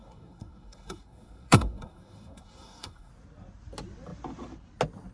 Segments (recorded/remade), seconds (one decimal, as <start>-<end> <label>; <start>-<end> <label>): 0.0-3.1 remade; 3.1-5.1 recorded